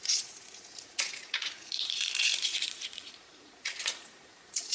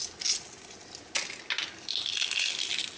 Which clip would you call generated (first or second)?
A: first